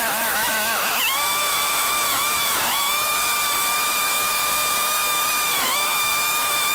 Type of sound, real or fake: fake